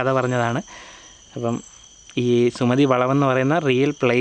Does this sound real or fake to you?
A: real